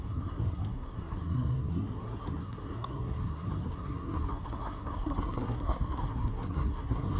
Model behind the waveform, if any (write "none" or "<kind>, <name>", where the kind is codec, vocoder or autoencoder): codec, SNAC